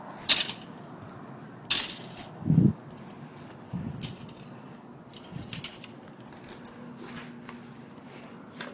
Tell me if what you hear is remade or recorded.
recorded